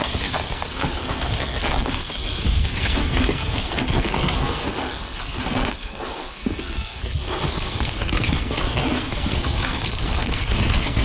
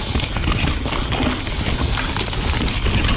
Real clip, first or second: second